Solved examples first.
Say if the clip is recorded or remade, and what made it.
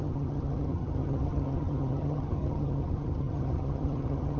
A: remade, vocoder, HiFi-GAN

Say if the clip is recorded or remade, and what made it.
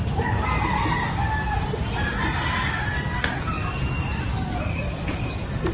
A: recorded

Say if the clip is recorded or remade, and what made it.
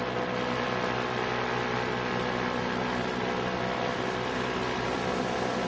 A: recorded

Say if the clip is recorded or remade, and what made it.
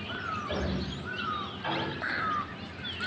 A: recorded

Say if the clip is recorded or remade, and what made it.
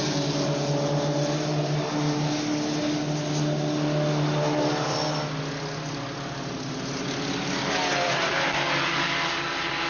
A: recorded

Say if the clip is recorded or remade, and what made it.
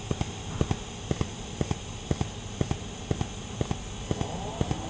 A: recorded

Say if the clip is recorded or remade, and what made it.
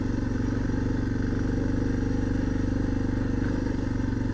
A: recorded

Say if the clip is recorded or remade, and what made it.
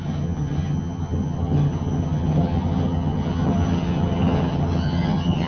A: remade, vocoder, HiFi-GAN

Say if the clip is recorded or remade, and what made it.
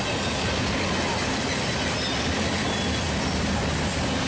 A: recorded